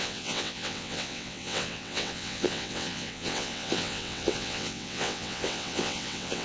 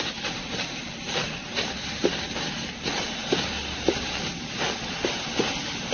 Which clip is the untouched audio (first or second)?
second